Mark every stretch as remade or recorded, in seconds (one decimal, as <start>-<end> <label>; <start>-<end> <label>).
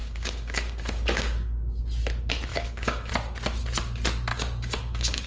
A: 0.0-1.8 remade; 1.8-2.5 recorded; 2.5-3.1 remade; 3.1-4.3 recorded; 4.3-5.3 remade